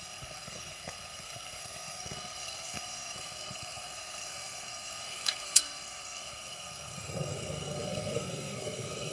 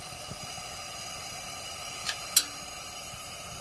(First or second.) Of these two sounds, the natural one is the second